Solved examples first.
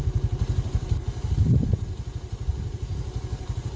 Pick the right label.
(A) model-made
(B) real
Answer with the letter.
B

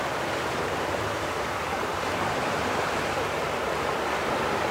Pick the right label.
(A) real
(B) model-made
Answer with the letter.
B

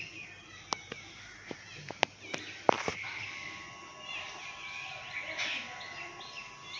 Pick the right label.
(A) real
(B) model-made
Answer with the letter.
A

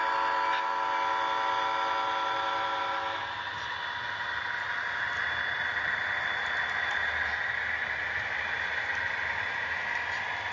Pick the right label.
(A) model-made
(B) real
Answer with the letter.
B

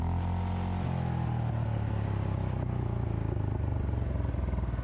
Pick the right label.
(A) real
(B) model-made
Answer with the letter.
A